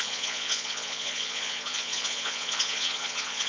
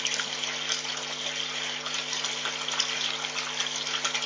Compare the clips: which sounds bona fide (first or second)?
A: second